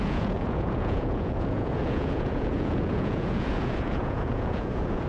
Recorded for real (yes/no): no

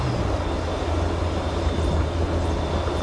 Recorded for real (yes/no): yes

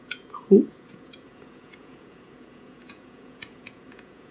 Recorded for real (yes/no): no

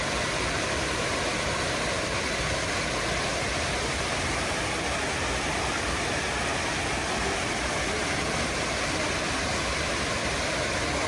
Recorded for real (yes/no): yes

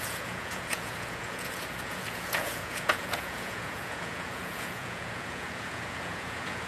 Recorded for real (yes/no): no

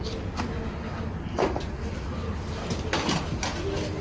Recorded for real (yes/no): yes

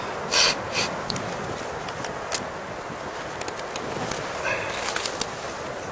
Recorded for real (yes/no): yes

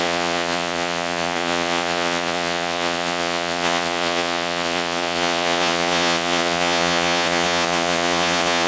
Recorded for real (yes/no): no